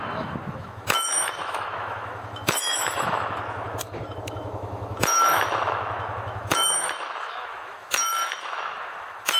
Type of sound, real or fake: fake